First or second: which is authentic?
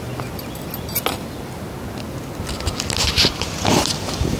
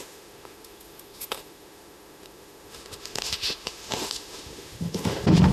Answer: first